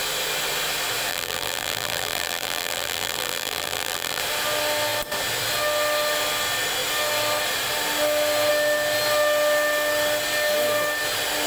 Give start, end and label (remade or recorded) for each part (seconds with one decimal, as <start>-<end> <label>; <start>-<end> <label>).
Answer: 0.0-1.1 recorded; 1.1-4.2 remade; 4.2-11.5 recorded